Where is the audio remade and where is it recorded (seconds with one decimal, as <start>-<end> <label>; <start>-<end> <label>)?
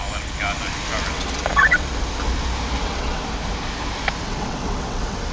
0.0-1.1 recorded; 1.1-1.9 remade; 1.9-2.8 recorded; 2.8-3.2 remade; 3.2-4.2 recorded; 4.2-5.3 remade